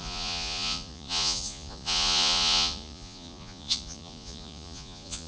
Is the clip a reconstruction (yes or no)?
yes